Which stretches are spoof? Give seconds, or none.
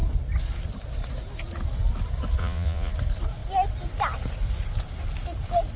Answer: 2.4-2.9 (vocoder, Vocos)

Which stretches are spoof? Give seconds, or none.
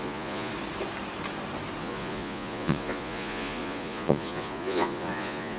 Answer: 0.0-0.5 (vocoder, Vocos); 1.8-5.6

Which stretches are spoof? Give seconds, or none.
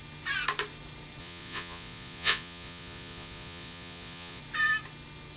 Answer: 1.2-4.4 (vocoder, Vocos)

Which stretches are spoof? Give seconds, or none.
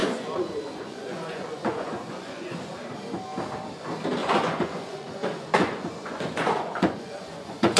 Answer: 0.0-2.6 (vocoder, Vocos); 4.2-7.8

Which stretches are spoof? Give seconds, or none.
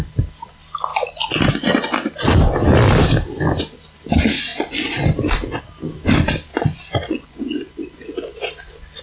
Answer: 6.5-8.5 (vocoder, Vocos)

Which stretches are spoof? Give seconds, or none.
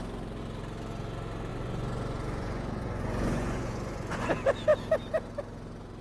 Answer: 1.5-4.3 (vocoder, Vocos)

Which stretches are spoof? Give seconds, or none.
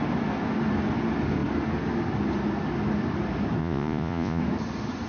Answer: 3.6-4.4 (vocoder, Vocos)